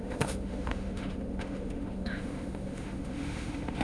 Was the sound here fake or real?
fake